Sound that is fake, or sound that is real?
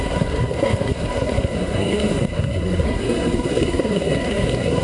fake